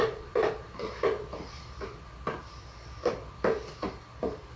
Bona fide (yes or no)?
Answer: no